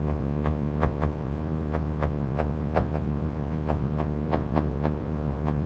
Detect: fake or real fake